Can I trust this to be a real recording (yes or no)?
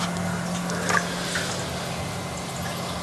yes